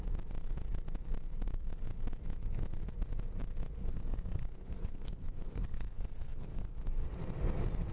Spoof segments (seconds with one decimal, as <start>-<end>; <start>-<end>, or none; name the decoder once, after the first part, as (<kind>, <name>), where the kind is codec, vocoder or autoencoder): 3.8-6.7 (codec, SNAC)